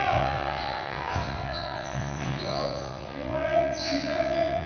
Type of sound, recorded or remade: remade